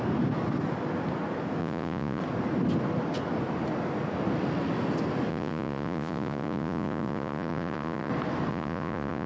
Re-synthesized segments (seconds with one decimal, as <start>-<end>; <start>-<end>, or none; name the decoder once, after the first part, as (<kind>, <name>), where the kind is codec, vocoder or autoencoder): 1.6-2.2 (vocoder, Vocos); 5.3-8.1; 8.5-9.3